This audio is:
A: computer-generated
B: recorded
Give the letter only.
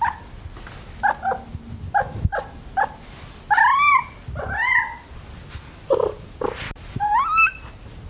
B